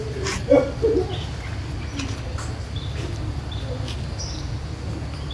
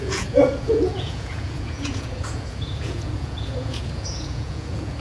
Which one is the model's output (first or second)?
second